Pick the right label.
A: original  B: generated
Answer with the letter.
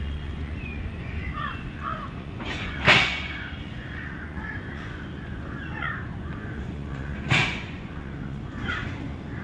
B